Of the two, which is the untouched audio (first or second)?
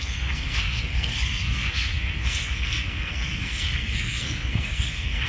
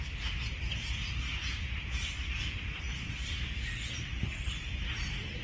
second